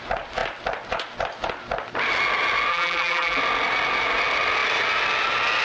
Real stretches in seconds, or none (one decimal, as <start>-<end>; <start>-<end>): 0.0-2.7; 3.4-5.6